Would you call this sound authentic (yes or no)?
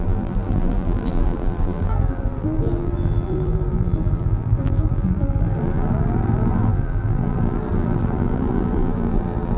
no